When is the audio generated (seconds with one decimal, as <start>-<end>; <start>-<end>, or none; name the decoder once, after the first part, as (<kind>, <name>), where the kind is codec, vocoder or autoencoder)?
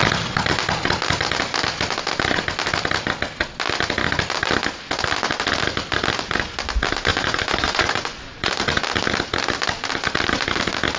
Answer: 7.1-8.5 (vocoder, Vocos)